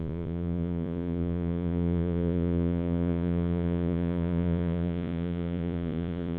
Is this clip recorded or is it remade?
remade